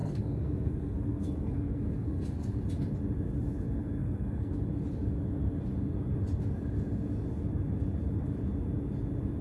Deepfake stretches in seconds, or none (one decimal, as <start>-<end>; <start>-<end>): 0.0-2.6; 3.8-4.6